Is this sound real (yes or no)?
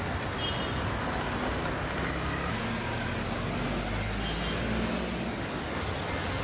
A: yes